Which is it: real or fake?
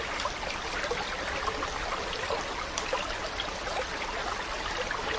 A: real